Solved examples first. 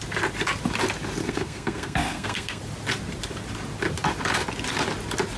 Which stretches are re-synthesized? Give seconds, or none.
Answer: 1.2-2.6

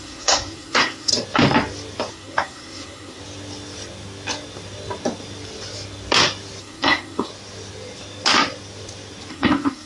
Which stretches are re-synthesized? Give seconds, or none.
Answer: 0.0-1.1; 2.1-3.2; 6.6-7.3; 9.3-9.9

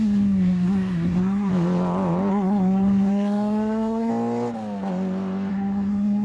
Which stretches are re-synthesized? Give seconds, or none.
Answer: 0.0-1.5; 2.3-4.1; 5.5-6.2

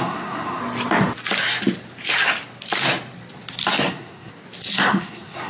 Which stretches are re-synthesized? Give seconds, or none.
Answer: 0.0-0.6; 3.9-4.3; 4.9-5.5